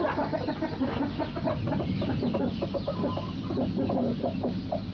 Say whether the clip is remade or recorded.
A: recorded